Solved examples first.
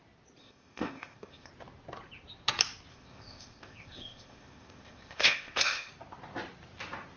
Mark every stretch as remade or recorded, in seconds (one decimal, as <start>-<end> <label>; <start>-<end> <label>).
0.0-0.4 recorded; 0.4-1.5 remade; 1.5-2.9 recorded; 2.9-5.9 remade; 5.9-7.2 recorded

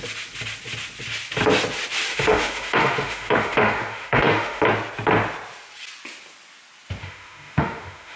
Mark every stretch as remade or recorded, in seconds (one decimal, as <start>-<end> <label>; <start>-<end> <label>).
0.0-2.1 recorded; 2.1-4.6 remade; 4.6-7.0 recorded; 7.0-8.2 remade

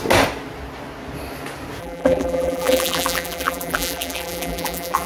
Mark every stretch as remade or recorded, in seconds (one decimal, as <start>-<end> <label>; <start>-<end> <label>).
0.0-1.8 recorded; 1.8-5.1 remade

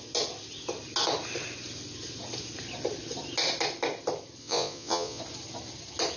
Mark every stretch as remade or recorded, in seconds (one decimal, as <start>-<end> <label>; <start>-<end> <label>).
0.0-4.4 recorded; 4.4-5.2 remade; 5.2-6.2 recorded